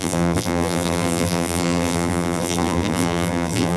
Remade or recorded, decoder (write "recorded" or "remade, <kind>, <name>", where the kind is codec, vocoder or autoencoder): remade, vocoder, BigVGAN v2